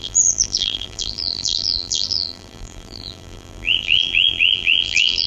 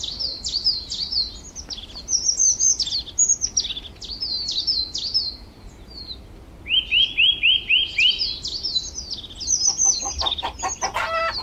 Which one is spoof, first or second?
first